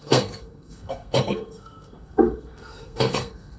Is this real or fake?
fake